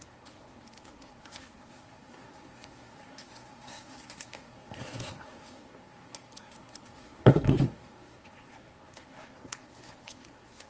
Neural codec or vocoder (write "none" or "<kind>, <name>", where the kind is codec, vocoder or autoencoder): codec, SNAC